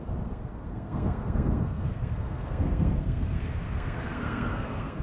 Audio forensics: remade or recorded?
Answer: remade